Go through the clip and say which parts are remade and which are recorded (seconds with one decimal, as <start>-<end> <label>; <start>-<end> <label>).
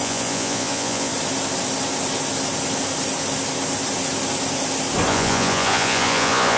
0.0-1.1 remade; 1.1-5.1 recorded; 5.1-6.6 remade